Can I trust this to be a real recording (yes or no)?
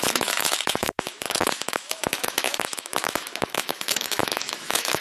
no